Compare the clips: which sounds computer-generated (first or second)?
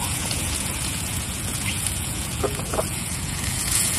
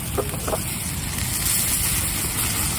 first